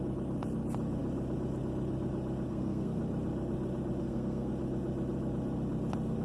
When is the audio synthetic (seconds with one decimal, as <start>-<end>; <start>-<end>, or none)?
2.5-3.0; 4.0-4.5